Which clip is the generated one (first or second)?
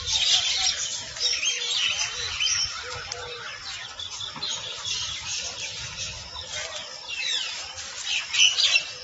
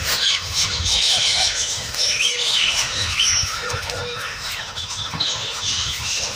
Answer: second